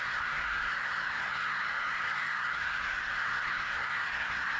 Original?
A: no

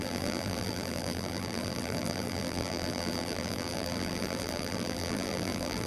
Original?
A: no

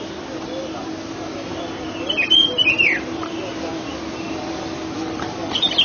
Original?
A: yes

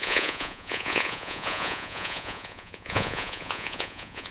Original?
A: no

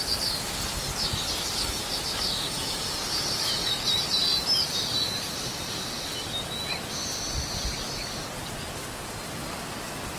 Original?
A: yes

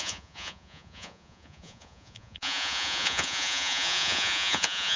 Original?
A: no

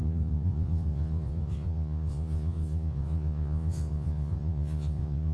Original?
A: no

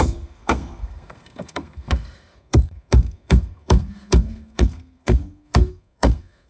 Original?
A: no